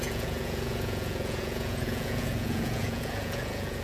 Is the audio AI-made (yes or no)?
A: yes